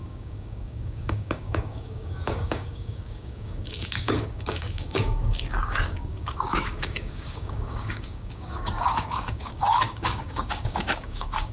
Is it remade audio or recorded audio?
remade